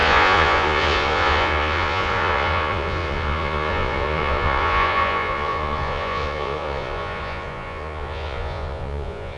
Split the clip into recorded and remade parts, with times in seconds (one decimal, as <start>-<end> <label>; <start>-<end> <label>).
0.0-9.4 remade